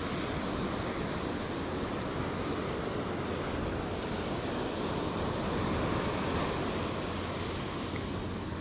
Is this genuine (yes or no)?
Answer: yes